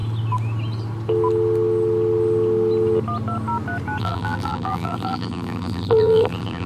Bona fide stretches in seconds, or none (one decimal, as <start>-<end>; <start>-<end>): 0.0-4.0